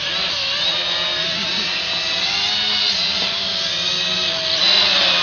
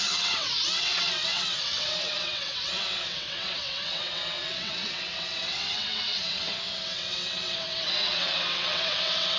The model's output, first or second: second